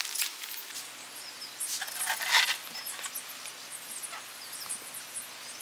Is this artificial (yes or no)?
no